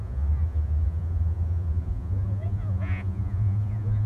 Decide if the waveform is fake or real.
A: fake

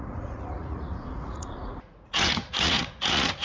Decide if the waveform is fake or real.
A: fake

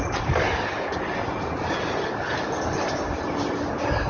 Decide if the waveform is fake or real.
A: real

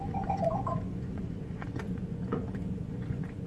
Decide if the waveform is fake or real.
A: fake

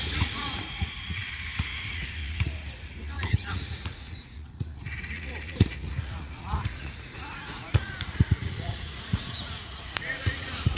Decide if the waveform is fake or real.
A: fake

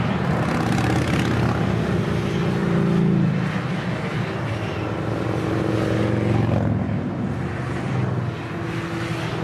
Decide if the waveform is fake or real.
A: real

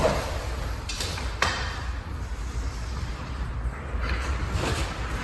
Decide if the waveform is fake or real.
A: real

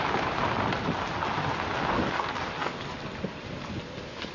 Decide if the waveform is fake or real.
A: real